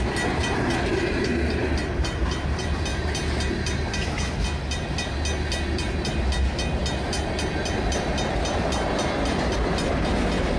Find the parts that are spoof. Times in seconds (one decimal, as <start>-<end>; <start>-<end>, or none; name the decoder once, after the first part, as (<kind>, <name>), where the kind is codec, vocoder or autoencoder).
none